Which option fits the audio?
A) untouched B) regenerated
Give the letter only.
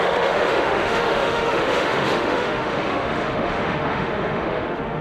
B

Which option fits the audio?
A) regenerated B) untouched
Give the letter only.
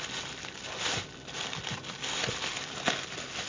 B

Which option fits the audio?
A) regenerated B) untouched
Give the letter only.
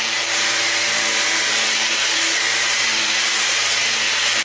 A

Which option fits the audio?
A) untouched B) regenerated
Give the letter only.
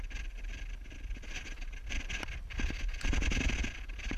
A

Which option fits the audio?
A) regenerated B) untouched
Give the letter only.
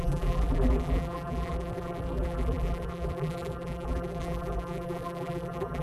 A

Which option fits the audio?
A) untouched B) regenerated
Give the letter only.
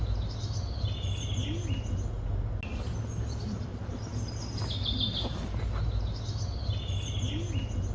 A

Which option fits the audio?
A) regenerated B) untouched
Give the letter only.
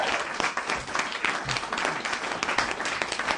B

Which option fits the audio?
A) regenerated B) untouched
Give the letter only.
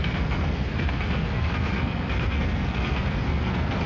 A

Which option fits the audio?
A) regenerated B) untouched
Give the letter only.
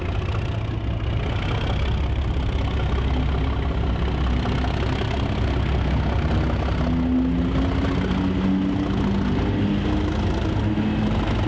B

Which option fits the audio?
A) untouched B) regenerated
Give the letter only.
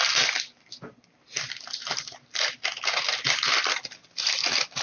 A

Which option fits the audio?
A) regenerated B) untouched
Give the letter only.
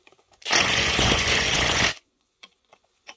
A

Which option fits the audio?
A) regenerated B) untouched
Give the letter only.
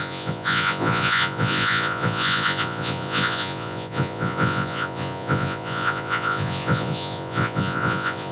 A